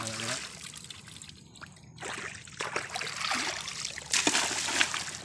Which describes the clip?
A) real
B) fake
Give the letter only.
A